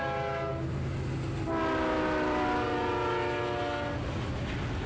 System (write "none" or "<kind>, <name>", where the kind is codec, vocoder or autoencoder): none